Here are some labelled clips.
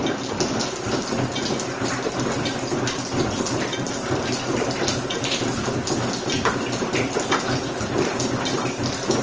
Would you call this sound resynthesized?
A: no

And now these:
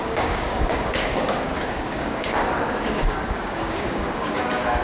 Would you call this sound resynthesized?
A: yes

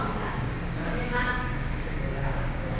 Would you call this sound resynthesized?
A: yes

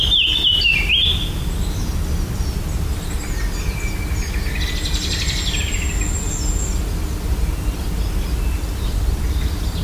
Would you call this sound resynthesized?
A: no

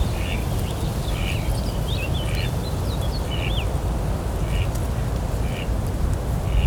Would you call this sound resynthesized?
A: no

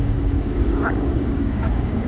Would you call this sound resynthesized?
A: yes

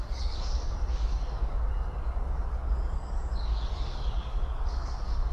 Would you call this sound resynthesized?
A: yes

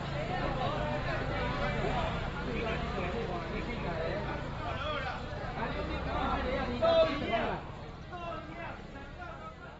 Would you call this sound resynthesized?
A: no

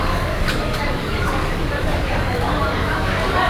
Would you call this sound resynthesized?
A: yes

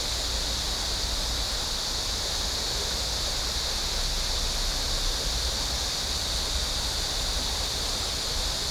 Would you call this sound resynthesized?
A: no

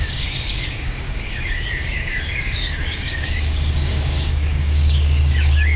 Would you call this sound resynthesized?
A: yes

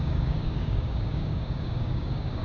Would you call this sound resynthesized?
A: yes